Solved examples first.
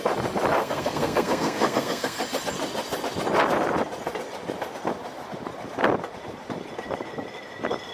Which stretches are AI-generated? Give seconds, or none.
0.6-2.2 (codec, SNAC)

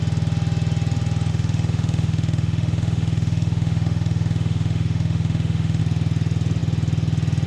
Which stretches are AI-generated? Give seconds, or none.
1.3-5.8 (autoencoder, DAC-VAE)